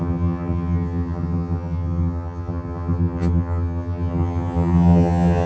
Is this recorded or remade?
remade